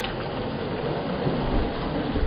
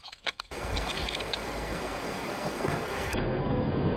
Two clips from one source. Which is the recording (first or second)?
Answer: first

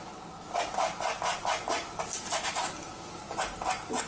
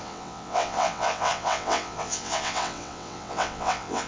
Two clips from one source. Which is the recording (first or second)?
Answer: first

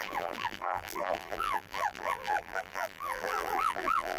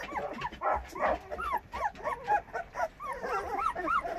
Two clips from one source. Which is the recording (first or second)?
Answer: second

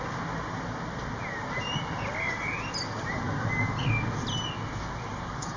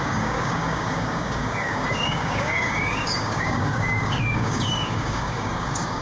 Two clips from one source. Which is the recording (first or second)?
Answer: first